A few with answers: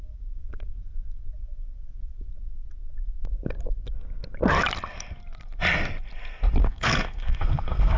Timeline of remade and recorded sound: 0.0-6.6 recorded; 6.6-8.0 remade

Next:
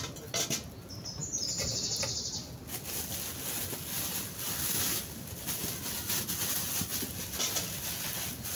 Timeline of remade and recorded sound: 0.0-8.6 recorded

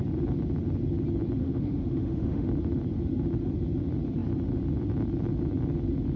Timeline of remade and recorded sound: 0.0-1.4 recorded; 1.4-2.5 remade; 2.5-6.2 recorded

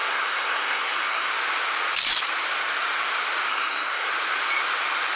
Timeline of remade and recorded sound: 0.0-1.3 remade; 1.3-3.5 recorded; 3.5-4.1 remade; 4.1-5.2 recorded

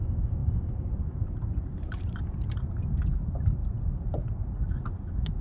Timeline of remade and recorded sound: 0.0-0.4 recorded; 0.4-2.8 remade; 2.8-3.6 recorded; 3.6-4.3 remade; 4.3-5.4 recorded

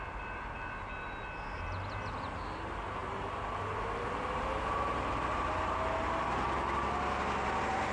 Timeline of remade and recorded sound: 0.0-7.9 recorded

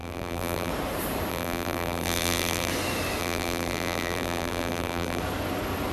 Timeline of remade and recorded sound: 0.0-0.7 remade; 0.7-1.3 recorded; 1.3-2.7 remade; 2.7-3.2 recorded; 3.2-5.2 remade; 5.2-5.9 recorded